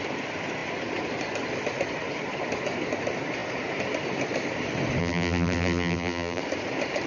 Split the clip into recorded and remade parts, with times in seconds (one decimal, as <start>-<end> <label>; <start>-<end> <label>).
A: 0.0-5.0 recorded; 5.0-6.4 remade; 6.4-7.1 recorded